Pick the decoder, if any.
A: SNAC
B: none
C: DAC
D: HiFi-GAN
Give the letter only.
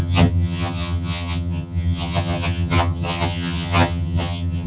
D